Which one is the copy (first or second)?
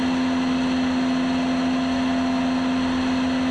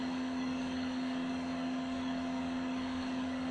second